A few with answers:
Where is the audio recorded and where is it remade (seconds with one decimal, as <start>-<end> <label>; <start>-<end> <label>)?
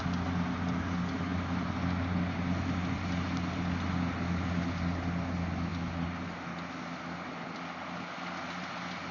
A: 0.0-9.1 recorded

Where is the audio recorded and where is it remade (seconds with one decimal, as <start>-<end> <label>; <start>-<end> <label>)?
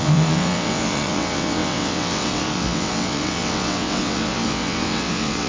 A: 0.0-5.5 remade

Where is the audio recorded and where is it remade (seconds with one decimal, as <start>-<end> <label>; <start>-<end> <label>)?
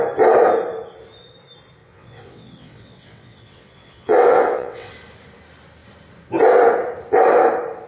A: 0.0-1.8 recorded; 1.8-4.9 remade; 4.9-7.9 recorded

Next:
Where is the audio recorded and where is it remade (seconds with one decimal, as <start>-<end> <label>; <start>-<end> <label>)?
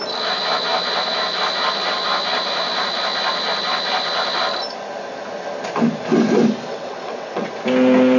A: 0.0-6.7 recorded; 6.7-7.5 remade; 7.5-8.2 recorded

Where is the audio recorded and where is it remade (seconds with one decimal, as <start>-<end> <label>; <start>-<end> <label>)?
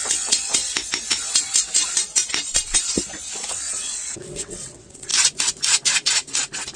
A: 0.0-0.6 remade; 0.6-3.5 recorded; 3.5-5.1 remade; 5.1-6.8 recorded